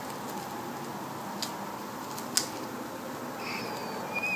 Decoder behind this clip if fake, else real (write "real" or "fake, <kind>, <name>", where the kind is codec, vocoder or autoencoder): real